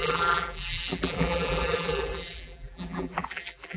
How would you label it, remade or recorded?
remade